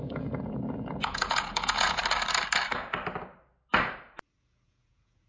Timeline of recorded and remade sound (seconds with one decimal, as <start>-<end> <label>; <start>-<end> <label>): 0.0-2.0 remade; 2.0-4.4 recorded; 4.4-5.3 remade